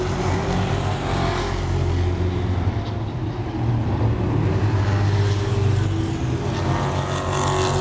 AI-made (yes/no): no